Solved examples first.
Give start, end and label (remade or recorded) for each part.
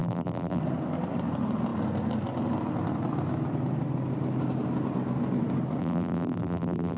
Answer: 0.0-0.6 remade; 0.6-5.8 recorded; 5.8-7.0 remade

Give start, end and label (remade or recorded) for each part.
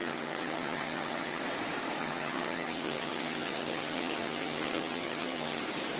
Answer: 0.0-1.4 remade; 1.4-2.0 recorded; 2.0-5.6 remade; 5.6-6.0 recorded